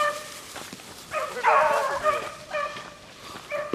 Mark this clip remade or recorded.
recorded